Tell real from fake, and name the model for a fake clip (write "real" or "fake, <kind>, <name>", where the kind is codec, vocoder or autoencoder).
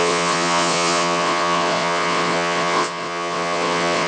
fake, vocoder, WaveNeXt